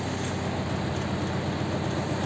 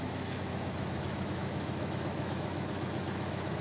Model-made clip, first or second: second